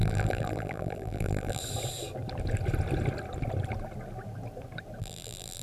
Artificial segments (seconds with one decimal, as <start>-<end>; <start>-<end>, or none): 0.0-1.6; 5.0-5.6